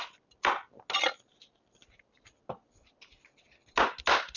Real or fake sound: real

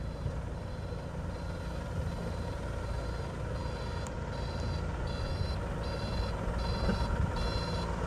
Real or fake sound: real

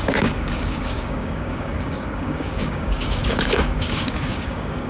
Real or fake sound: fake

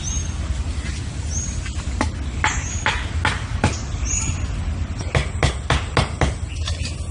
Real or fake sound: real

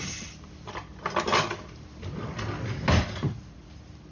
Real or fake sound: real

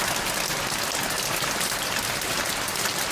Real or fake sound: real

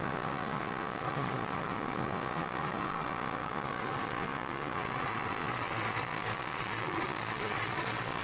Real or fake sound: fake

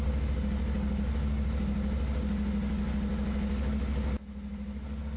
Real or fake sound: real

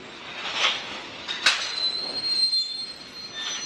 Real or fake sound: real